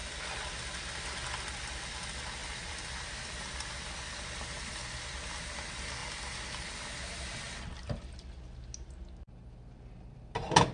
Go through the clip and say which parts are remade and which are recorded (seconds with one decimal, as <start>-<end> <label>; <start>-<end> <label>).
0.0-2.4 recorded; 2.4-4.2 remade; 4.2-10.7 recorded